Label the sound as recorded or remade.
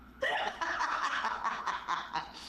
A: remade